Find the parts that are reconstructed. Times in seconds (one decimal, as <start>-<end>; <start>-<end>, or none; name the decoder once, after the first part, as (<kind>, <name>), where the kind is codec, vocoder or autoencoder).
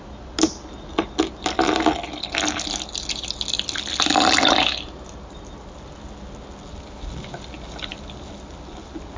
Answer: none